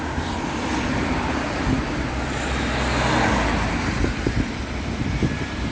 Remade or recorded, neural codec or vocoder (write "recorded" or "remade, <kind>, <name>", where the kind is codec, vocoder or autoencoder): recorded